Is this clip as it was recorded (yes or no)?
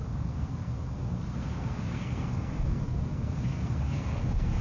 no